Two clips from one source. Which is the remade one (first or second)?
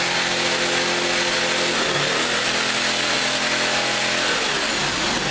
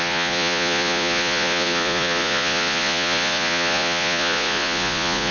second